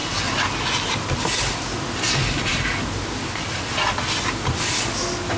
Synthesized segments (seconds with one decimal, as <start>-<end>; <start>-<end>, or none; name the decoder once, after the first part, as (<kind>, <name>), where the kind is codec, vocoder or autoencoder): none